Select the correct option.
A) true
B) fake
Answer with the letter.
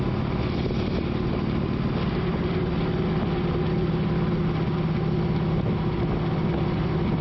A